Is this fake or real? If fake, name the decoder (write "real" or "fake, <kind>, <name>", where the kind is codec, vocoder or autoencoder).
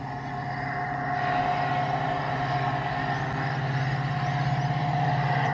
real